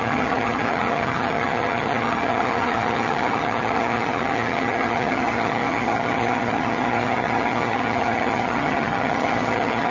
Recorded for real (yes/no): no